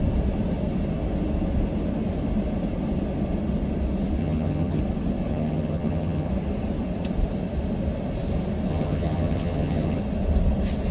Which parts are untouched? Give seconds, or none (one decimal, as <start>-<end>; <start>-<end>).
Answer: 0.0-4.2; 4.8-5.3; 6.3-8.7; 10.0-10.9